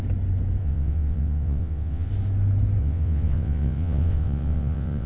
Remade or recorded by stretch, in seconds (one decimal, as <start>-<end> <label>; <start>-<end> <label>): 0.0-0.6 recorded; 0.6-2.1 remade; 2.1-2.8 recorded; 2.8-5.1 remade